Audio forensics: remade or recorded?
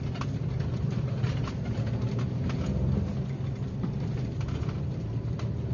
recorded